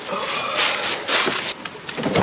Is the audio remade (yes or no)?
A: no